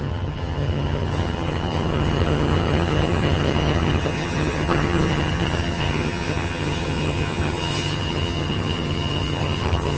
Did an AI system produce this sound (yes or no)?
yes